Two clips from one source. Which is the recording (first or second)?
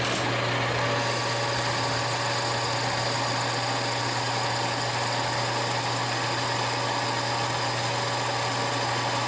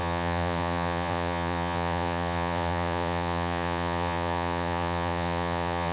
first